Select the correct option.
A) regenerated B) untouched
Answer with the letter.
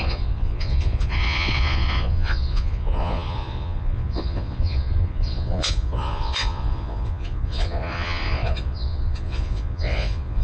A